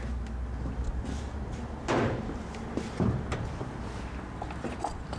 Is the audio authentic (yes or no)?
yes